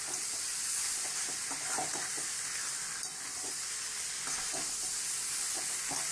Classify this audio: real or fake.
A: real